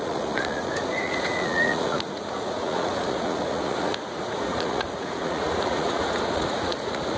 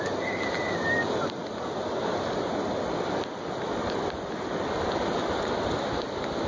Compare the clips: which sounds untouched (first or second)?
second